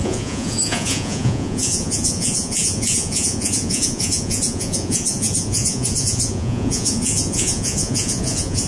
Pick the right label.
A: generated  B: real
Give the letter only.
A